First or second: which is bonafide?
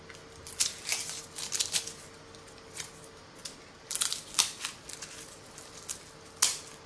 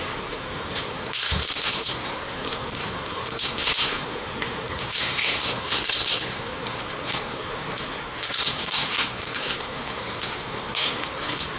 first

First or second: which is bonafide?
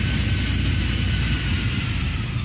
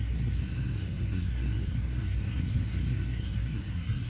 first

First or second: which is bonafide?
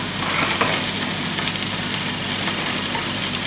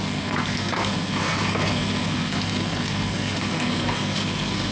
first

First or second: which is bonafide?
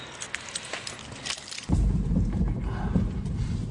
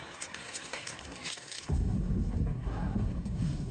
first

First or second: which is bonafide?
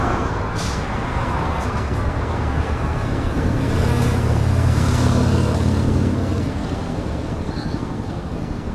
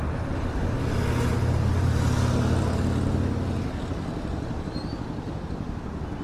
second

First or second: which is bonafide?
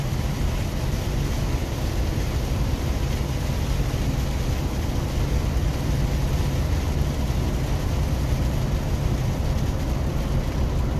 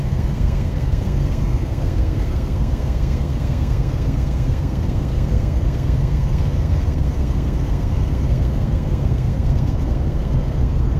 first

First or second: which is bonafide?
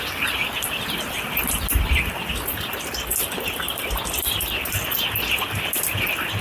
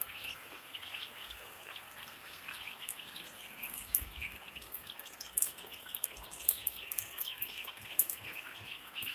first